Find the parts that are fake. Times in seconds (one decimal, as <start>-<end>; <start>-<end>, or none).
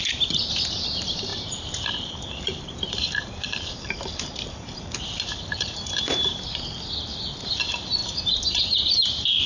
1.3-6.5; 8.0-8.9